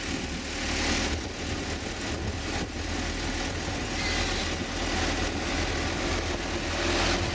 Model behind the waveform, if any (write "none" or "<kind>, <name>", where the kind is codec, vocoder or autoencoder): none